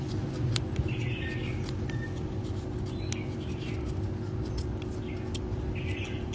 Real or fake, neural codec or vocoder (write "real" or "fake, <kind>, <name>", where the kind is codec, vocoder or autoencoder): real